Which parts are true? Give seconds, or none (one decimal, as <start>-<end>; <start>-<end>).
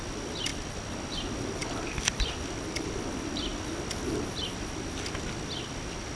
0.0-6.2